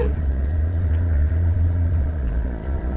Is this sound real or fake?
fake